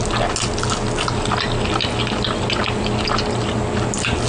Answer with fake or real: real